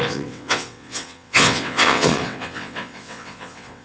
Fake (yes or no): yes